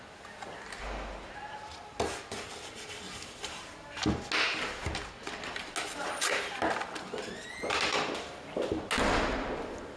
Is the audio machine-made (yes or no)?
no